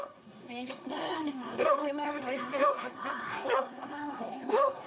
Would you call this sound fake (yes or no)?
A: yes